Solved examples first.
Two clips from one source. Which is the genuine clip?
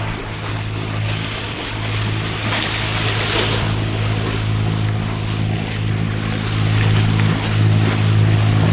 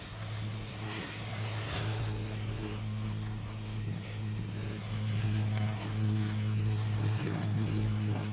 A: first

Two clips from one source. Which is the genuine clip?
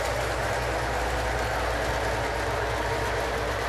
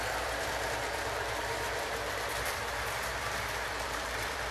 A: first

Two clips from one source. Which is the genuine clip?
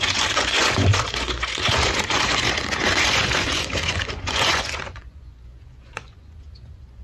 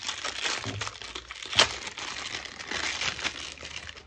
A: second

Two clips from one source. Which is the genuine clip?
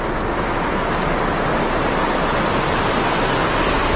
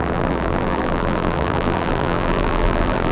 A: first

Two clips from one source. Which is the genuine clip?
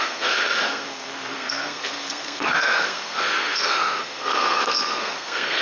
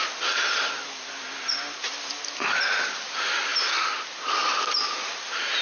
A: second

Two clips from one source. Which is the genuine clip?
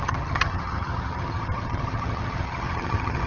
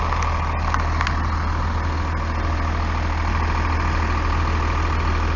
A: second